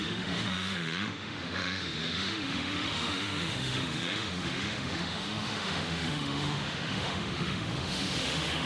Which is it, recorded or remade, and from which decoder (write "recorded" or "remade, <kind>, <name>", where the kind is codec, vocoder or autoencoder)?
remade, autoencoder, DAC-VAE